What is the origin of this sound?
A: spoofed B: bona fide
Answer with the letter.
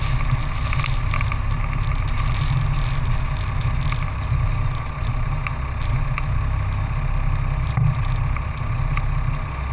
B